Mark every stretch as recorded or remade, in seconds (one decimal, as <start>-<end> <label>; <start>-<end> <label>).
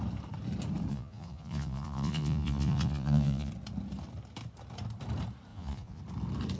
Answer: 0.0-0.9 recorded; 0.9-3.5 remade; 3.5-5.5 recorded; 5.5-6.0 remade; 6.0-6.6 recorded